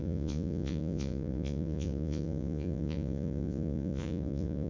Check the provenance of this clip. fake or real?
fake